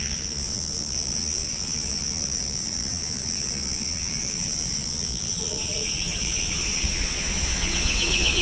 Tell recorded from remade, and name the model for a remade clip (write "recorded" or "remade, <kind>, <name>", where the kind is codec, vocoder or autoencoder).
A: remade, vocoder, Vocos